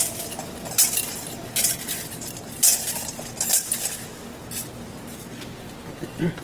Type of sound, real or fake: real